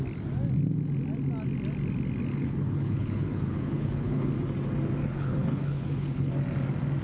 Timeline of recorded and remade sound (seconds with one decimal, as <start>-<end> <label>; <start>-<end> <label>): 0.0-2.3 recorded; 2.3-4.3 remade; 4.3-5.0 recorded; 5.0-6.3 remade; 6.3-7.0 recorded